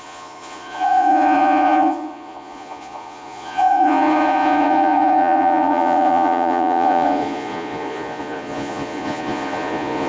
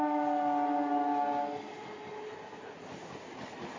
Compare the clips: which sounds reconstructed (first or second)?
first